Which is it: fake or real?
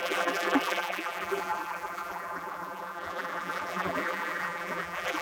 fake